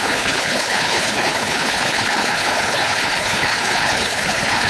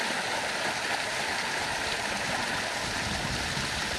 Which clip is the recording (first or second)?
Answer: second